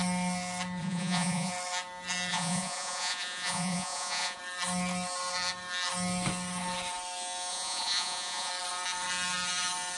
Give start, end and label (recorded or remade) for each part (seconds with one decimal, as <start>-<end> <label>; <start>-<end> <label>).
0.0-0.8 recorded; 0.8-1.5 remade; 1.5-2.3 recorded; 2.3-4.4 remade; 4.4-7.5 recorded; 7.5-8.5 remade; 8.5-10.0 recorded